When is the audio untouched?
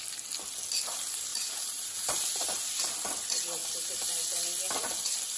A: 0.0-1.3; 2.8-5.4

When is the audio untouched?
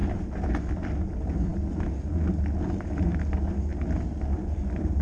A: 0.6-5.0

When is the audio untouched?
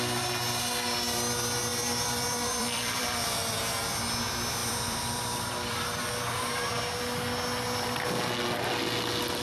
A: 0.0-1.7; 3.6-4.6; 6.0-9.4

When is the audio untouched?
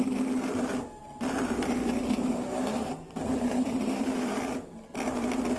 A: 0.0-1.0; 4.4-5.6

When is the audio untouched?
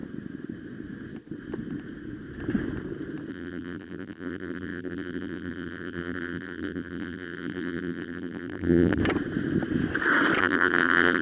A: 0.0-3.3; 9.0-10.4